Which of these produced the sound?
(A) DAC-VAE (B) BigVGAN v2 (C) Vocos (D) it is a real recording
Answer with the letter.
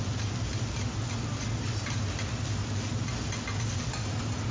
D